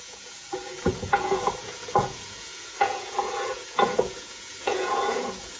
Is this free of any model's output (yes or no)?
no